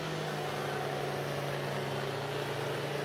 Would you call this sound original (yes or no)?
yes